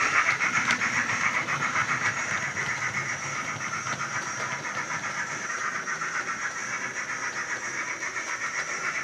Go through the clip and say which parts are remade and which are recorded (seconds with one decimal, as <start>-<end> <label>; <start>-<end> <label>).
0.0-6.6 remade; 6.6-7.5 recorded; 7.5-9.0 remade